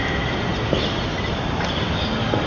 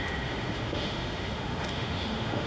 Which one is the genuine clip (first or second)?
first